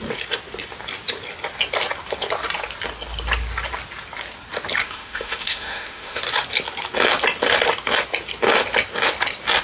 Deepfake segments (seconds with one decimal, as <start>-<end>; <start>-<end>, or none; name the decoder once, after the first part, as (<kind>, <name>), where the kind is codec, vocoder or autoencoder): 4.8-6.2 (autoencoder, DAC-VAE)